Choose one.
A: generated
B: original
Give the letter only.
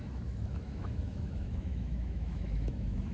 A